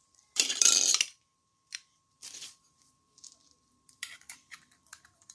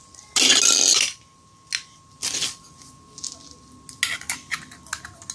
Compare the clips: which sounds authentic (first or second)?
second